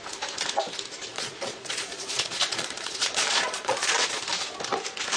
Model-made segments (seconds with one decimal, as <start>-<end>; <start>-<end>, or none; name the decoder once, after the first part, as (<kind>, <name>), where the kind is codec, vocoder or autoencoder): 1.1-4.2 (vocoder, Vocos)